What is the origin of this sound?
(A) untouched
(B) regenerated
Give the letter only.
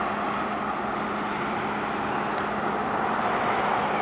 A